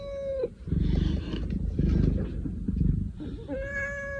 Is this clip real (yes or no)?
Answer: yes